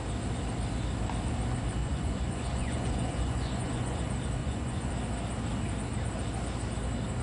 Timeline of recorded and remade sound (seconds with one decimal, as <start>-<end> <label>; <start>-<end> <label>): 0.0-1.8 recorded; 1.8-4.0 remade; 4.0-4.4 recorded; 4.4-4.9 remade; 4.9-7.2 recorded